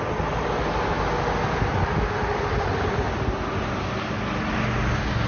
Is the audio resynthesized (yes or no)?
no